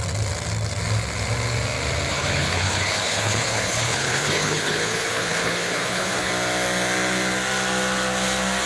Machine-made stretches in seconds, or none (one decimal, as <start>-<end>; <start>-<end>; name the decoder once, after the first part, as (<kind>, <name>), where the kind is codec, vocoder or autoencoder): 2.1-6.3 (codec, HILCodec)

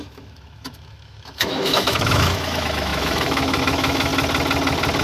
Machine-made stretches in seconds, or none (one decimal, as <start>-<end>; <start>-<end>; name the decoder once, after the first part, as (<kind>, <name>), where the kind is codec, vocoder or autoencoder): 0.0-4.1 (autoencoder, DAC-VAE)

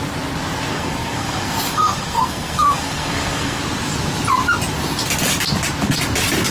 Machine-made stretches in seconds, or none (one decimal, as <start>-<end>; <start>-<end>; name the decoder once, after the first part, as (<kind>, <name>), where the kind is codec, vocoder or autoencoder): 0.7-3.6 (codec, SNAC)

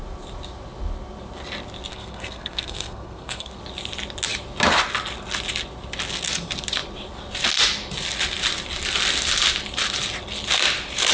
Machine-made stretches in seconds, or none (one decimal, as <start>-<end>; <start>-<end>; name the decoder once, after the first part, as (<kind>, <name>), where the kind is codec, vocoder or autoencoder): 1.9-3.6 (codec, SNAC)

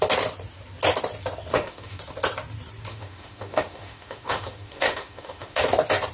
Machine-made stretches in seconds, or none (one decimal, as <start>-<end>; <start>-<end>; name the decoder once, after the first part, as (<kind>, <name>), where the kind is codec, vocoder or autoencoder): 1.5-2.0 (autoencoder, DAC-VAE); 2.9-5.6

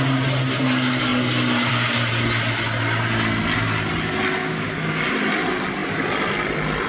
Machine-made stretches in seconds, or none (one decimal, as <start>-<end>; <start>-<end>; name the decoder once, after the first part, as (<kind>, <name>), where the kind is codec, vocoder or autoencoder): 4.4-5.1 (codec, DAC)

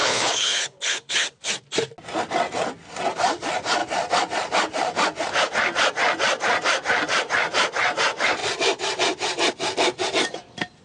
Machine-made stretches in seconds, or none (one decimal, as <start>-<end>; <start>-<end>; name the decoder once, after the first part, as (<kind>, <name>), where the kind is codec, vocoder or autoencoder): 0.0-1.5 (codec, HILCodec)